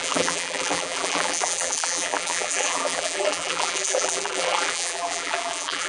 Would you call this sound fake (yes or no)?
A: yes